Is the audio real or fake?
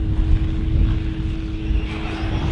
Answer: real